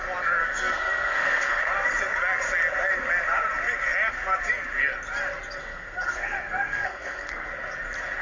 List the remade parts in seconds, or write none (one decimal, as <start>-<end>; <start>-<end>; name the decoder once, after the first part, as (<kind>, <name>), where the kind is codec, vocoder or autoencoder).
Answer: 0.4-1.6 (codec, SNAC); 5.6-7.5